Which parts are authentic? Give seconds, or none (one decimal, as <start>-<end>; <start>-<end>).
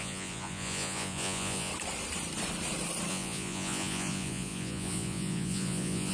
1.7-3.1